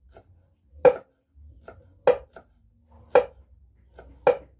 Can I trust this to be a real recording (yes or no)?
yes